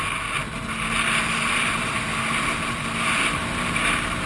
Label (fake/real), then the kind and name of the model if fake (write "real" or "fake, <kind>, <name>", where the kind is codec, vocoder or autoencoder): real